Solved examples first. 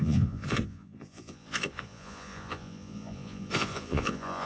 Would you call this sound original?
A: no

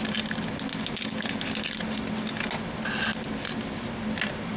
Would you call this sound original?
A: yes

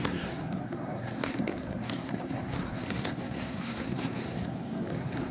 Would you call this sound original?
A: no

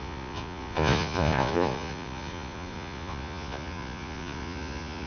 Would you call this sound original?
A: no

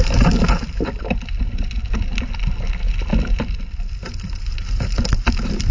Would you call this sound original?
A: yes